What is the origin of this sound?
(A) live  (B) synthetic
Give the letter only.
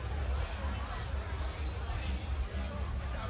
A